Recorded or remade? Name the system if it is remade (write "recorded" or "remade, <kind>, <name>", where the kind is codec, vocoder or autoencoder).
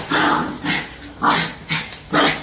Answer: recorded